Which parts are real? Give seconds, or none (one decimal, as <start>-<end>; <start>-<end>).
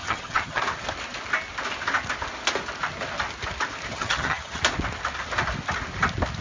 0.6-3.9; 4.6-6.4